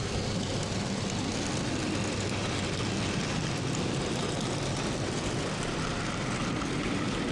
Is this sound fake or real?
real